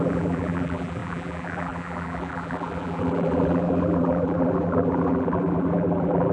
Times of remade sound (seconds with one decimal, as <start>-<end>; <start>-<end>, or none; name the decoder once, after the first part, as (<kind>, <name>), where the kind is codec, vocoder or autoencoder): 0.0-6.3 (vocoder, BigVGAN v2)